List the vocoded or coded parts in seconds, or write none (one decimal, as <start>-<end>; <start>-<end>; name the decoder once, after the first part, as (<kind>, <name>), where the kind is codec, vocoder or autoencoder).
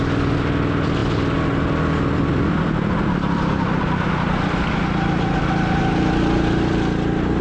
none